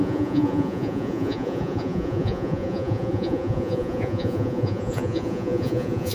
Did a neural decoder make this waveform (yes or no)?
yes